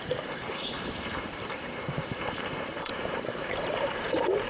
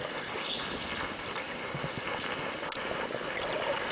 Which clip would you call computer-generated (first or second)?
first